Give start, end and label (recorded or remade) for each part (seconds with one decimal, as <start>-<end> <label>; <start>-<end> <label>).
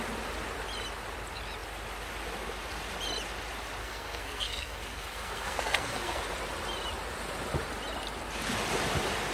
0.0-3.8 recorded; 3.8-6.2 remade; 6.2-9.3 recorded